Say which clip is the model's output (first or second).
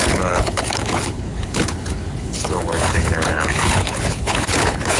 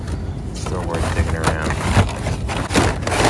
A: first